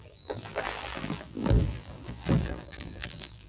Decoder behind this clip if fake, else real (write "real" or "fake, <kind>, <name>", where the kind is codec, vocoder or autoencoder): fake, vocoder, BigVGAN v2